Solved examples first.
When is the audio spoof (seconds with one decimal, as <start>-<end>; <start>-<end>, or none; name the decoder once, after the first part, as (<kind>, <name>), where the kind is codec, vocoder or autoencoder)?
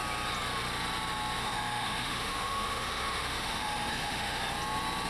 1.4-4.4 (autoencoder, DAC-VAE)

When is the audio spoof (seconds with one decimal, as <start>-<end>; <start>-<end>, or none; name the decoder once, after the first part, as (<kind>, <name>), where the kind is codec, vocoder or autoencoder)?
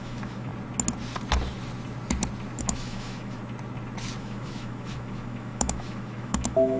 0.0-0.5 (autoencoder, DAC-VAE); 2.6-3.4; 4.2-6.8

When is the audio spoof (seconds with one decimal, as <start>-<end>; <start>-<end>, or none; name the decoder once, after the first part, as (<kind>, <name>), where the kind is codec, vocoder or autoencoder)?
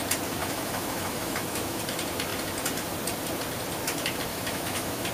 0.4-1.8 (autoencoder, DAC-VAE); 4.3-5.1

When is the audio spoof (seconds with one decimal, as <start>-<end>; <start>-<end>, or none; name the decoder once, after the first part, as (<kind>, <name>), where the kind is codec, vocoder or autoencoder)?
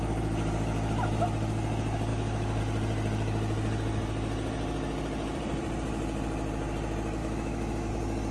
2.1-2.6 (autoencoder, DAC-VAE); 7.2-7.9